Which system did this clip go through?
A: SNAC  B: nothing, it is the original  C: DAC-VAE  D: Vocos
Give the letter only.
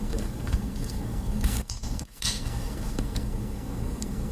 A